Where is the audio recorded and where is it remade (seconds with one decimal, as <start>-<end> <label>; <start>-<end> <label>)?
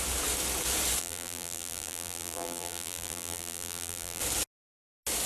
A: 0.0-1.0 recorded; 1.0-4.2 remade; 4.2-5.3 recorded